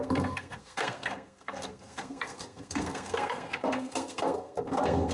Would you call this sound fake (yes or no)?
yes